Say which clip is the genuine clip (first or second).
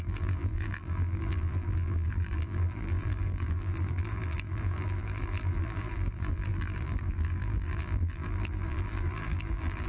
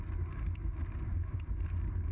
second